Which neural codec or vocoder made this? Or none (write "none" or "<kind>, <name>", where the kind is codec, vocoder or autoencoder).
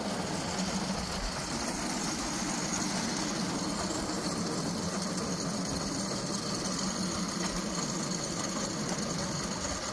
none